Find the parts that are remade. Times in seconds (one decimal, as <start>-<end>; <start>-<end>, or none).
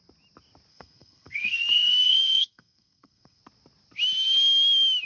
0.7-3.4